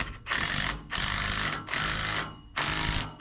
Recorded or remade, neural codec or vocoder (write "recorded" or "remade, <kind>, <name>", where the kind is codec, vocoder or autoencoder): recorded